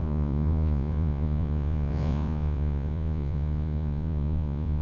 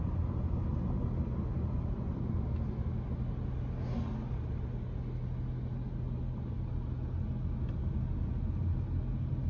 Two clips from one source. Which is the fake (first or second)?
first